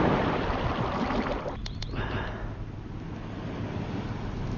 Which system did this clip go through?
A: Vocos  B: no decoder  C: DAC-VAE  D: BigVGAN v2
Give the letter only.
B